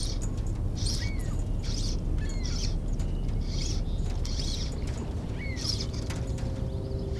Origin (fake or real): real